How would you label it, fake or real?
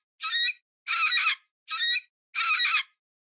real